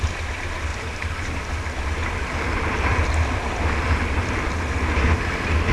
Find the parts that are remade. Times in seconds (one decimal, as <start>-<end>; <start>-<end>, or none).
0.7-1.6